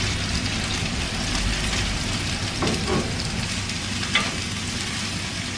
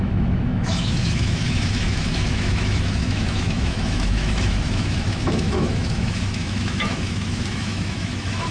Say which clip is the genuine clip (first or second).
first